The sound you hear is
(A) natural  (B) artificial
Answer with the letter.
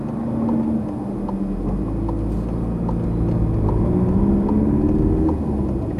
A